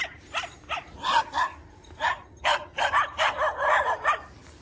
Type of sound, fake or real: real